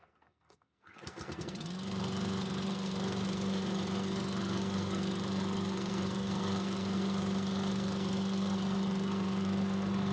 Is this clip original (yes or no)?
no